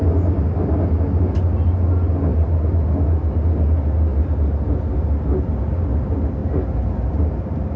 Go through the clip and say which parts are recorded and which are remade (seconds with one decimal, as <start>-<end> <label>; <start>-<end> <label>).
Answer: 0.0-7.8 recorded